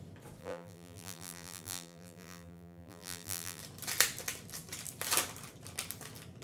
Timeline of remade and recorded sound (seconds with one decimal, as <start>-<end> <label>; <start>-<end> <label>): 0.0-0.4 recorded; 0.4-3.6 remade; 3.6-6.4 recorded